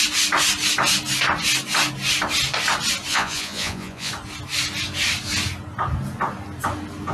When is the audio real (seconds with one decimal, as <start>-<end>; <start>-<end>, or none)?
0.0-3.1; 4.1-7.1